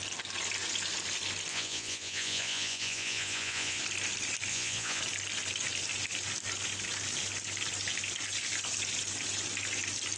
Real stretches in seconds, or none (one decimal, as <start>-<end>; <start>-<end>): 0.0-1.5; 3.8-4.5; 5.0-10.2